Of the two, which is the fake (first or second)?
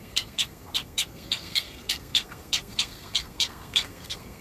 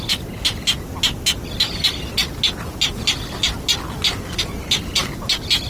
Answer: first